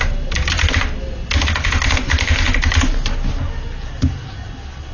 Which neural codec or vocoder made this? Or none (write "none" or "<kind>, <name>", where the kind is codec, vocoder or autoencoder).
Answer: none